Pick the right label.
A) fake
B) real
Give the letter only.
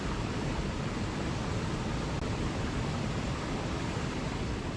A